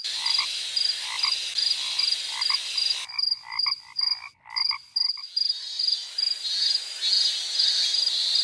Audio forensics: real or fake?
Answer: real